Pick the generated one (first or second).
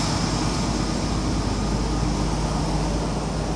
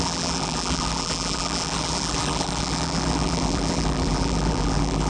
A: second